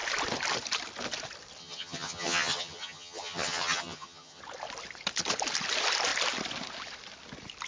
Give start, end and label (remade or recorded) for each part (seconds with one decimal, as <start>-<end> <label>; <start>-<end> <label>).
0.0-1.6 recorded; 1.6-4.4 remade; 4.4-7.7 recorded